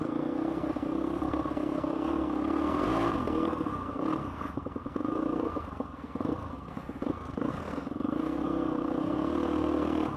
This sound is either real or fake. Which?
fake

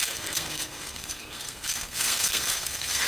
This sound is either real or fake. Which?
fake